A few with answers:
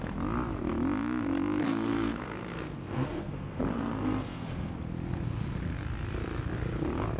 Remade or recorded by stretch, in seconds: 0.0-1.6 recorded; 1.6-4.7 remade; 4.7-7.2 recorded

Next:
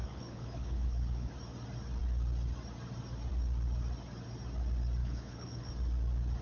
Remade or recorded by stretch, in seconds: 0.0-1.3 remade; 1.3-5.0 recorded; 5.0-5.7 remade; 5.7-6.4 recorded

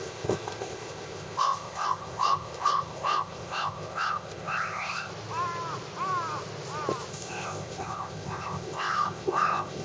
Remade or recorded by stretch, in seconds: 0.0-5.1 remade; 5.1-7.1 recorded; 7.1-9.8 remade

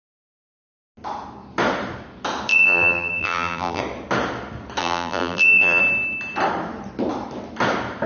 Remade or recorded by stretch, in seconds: 0.0-2.5 recorded; 2.5-3.8 remade; 3.8-4.8 recorded; 4.8-5.8 remade; 5.8-8.1 recorded